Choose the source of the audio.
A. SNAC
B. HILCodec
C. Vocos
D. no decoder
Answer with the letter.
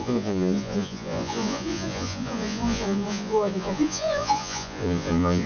C